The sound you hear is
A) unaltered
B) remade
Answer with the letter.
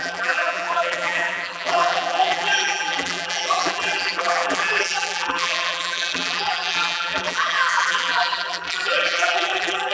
B